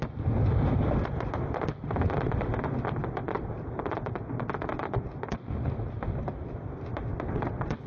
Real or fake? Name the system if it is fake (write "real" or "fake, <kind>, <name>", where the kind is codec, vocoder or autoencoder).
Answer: real